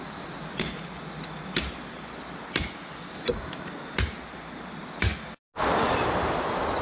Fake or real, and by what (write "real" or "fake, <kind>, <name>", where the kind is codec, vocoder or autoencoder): real